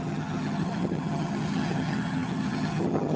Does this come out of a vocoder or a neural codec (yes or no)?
yes